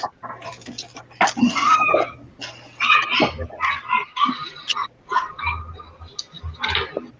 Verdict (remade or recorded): recorded